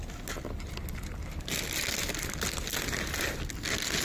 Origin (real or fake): real